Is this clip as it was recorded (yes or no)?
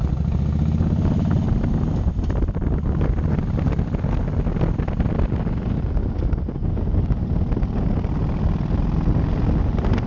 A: yes